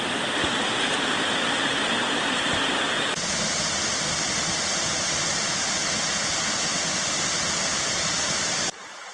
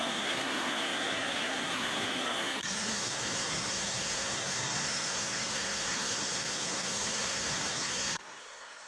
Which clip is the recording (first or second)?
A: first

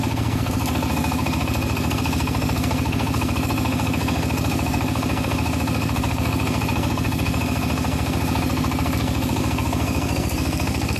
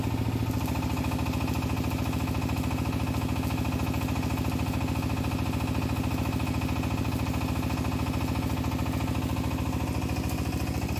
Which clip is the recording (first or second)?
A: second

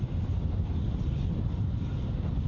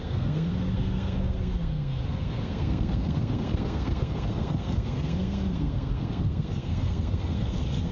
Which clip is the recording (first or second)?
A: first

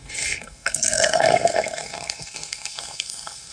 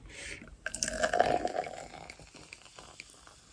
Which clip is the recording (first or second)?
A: second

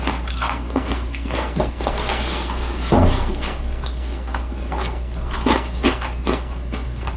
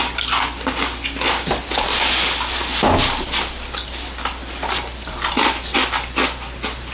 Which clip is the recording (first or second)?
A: second